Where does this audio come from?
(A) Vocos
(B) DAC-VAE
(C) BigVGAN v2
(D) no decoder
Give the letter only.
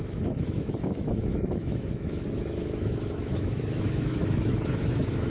B